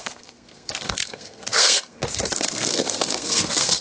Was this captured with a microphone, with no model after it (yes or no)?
no